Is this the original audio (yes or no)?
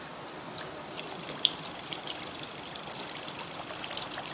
no